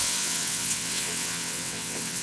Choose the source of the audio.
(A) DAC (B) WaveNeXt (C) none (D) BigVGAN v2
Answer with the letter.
B